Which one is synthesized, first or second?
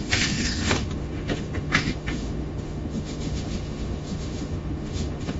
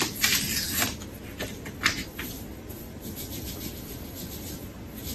first